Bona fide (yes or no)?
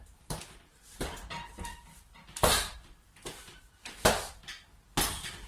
yes